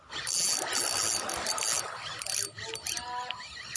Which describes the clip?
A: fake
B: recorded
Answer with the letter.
B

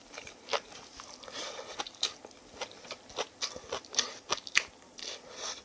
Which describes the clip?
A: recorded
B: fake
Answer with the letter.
A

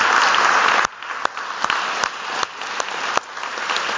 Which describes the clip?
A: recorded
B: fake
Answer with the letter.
A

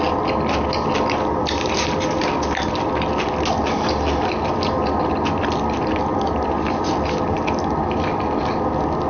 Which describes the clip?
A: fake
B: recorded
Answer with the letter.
B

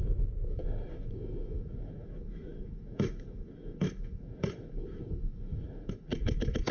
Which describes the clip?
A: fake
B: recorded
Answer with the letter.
A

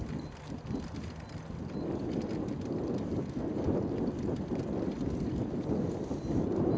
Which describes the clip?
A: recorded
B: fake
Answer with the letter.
A